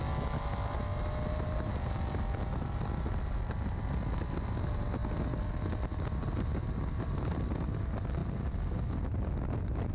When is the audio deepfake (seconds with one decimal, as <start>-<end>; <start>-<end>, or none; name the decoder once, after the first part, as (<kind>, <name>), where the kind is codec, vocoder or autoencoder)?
none